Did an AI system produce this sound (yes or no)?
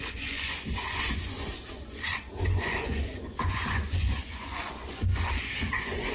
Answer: yes